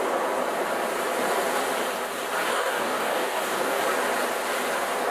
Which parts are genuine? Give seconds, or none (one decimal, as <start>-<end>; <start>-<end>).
0.0-2.5; 3.8-5.1